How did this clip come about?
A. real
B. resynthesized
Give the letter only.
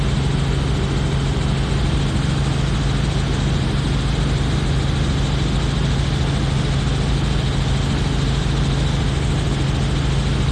A